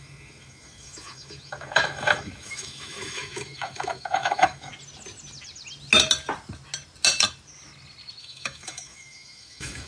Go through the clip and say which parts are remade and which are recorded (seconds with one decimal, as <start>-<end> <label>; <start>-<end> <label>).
0.0-4.7 remade; 4.7-8.2 recorded; 8.2-9.9 remade